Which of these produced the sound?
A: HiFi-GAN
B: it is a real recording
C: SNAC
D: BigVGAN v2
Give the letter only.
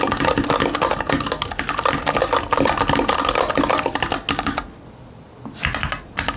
B